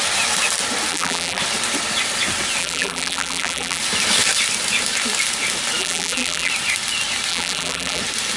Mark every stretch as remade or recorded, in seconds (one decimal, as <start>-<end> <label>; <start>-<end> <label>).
0.0-0.9 recorded; 0.9-1.4 remade; 1.4-2.6 recorded; 2.6-3.8 remade; 3.8-5.8 recorded; 5.8-6.5 remade; 6.5-7.3 recorded; 7.3-8.0 remade; 8.0-8.4 recorded